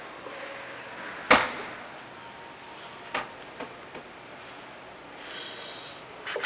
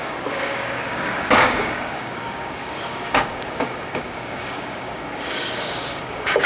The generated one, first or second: second